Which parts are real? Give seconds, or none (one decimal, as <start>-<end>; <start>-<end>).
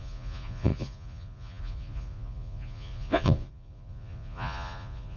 none